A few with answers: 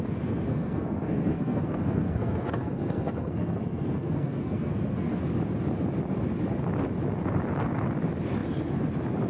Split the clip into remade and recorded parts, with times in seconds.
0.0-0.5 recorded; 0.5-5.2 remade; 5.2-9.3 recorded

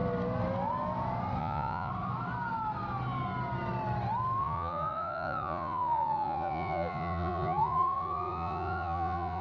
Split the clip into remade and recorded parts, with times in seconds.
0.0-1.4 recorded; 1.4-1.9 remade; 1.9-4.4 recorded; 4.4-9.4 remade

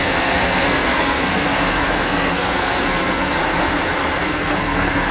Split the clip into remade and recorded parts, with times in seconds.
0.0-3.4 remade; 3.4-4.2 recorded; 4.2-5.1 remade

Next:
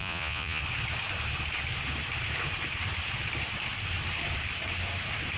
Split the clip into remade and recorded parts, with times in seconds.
0.0-0.6 remade; 0.6-5.4 recorded

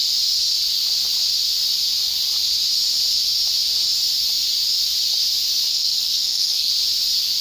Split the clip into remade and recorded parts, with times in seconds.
0.0-5.7 recorded; 5.7-6.7 remade; 6.7-7.4 recorded